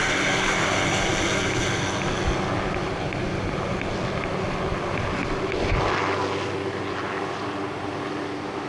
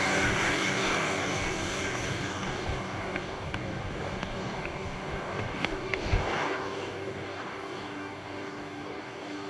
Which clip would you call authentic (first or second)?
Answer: first